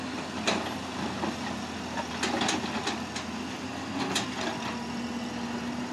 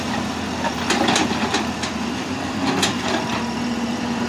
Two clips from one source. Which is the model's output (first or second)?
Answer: second